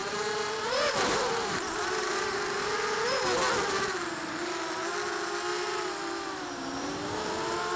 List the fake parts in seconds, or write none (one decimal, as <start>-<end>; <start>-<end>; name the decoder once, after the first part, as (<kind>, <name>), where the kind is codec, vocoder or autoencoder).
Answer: 0.0-2.7 (vocoder, BigVGAN v2); 5.5-7.3